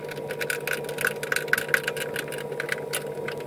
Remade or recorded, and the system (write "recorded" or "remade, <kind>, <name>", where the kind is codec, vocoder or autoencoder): recorded